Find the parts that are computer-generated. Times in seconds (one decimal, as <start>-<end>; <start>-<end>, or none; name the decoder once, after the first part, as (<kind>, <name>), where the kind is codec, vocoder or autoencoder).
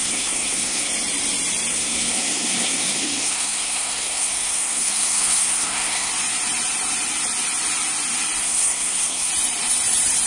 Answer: 0.0-0.9 (codec, SNAC); 1.7-6.1; 8.4-9.3